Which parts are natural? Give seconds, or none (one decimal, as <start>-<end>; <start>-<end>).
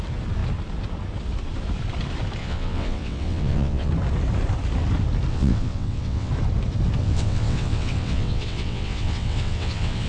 0.0-2.4; 3.9-5.3; 6.3-7.0